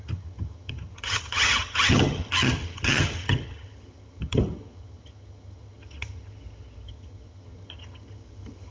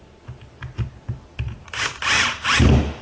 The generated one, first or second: first